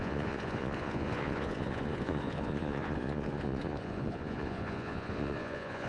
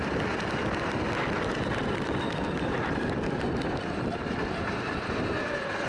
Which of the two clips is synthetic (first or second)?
first